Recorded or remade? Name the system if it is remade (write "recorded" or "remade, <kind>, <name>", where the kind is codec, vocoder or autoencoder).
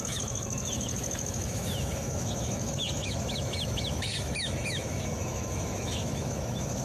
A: remade, autoencoder, DAC-VAE